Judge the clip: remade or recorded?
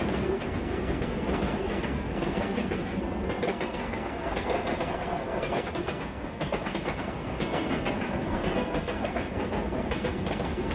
remade